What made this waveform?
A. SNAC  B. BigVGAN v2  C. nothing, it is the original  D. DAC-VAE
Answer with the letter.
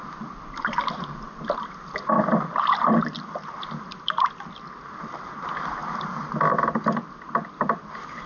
C